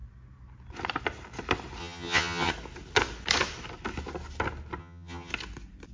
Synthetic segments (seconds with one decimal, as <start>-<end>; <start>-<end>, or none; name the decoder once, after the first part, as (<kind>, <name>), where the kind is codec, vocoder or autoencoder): 1.8-2.5 (vocoder, HiFi-GAN); 4.8-5.3